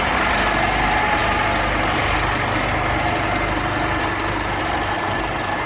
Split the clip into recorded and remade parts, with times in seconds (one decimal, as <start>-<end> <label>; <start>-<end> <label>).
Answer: 0.0-5.7 recorded